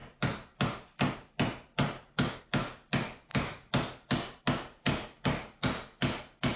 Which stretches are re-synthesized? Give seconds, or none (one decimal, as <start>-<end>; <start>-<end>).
none

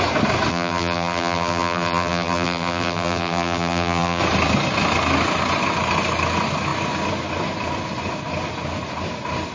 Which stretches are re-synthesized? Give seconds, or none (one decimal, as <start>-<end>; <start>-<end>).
0.5-4.2

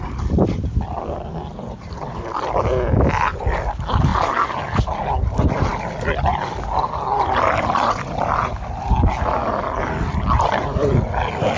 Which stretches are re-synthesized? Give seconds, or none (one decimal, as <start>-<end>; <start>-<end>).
none

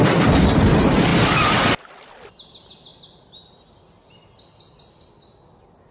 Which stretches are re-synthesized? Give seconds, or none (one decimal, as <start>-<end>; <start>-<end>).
none

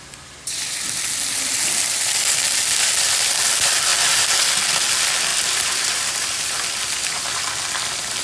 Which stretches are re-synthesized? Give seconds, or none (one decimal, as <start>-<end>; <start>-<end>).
5.3-7.4

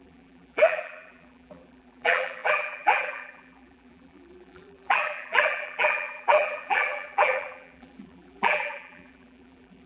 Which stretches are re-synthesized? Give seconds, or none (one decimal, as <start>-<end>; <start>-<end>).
0.0-9.9

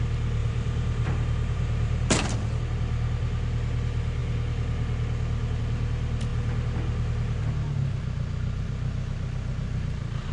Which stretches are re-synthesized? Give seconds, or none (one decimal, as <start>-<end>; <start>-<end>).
0.4-2.6